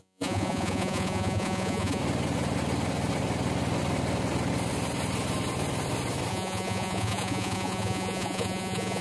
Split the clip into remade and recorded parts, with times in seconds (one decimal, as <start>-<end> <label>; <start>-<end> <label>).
0.0-2.0 remade; 2.0-6.3 recorded; 6.3-9.0 remade